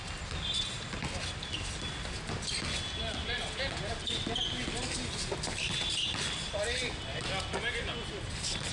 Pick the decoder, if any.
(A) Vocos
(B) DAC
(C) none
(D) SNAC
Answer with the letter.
C